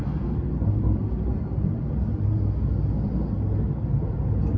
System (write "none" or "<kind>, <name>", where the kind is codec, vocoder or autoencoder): none